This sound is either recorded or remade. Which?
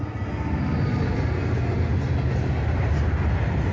recorded